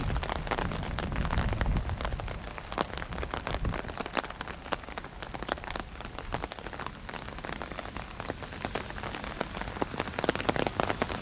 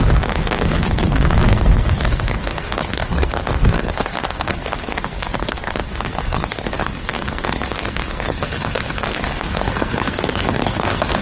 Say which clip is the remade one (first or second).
second